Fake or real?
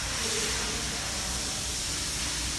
real